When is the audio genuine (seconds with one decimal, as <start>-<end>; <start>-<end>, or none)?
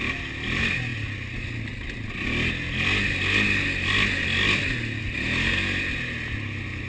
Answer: 0.0-6.9